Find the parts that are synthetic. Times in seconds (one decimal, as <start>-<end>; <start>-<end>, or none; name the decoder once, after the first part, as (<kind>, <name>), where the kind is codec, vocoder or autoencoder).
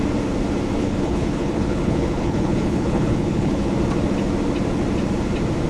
0.8-3.7 (codec, HILCodec)